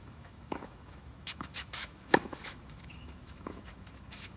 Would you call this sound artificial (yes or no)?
yes